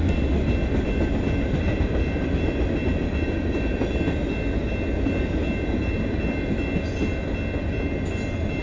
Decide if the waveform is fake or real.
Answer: real